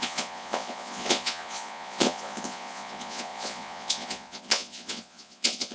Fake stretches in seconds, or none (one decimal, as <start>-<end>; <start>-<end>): 0.0-5.7